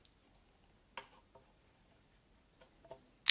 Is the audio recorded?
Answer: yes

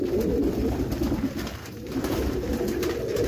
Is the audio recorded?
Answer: yes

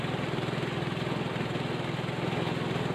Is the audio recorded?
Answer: yes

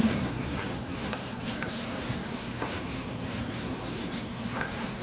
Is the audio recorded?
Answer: no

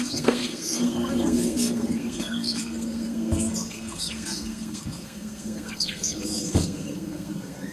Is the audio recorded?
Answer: no